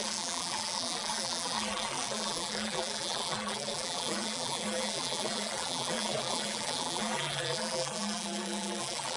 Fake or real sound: fake